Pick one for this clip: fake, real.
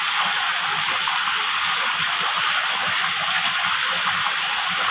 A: real